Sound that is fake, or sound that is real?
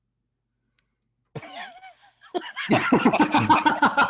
real